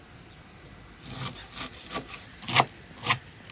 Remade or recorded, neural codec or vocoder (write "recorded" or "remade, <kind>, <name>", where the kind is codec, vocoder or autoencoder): recorded